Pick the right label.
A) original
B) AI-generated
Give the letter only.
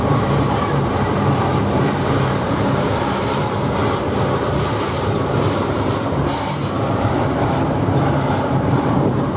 B